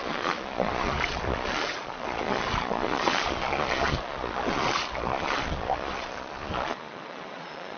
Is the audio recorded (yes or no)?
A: no